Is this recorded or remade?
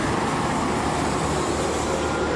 remade